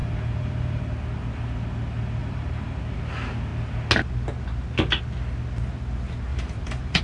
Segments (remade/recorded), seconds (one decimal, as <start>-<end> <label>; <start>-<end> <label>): 0.0-0.8 remade; 0.8-2.2 recorded; 2.2-2.8 remade; 2.8-6.3 recorded; 6.3-7.0 remade